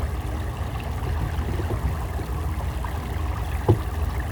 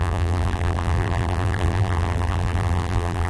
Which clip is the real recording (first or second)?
first